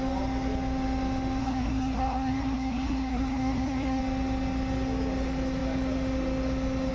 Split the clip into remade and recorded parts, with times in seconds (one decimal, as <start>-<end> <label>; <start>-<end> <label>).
0.0-1.4 recorded; 1.4-4.0 remade; 4.0-6.9 recorded

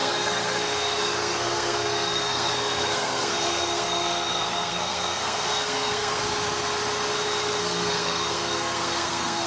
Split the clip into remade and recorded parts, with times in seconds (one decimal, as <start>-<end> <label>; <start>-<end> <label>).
0.0-6.2 remade; 6.2-7.6 recorded; 7.6-9.5 remade